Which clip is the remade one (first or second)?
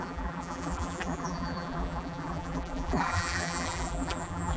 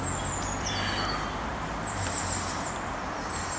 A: first